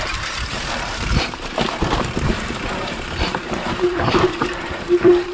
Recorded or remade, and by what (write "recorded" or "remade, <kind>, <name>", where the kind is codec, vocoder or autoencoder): remade, vocoder, BigVGAN v2